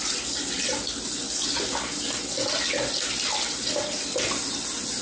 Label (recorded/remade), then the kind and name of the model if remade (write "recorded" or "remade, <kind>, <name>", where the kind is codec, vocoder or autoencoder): recorded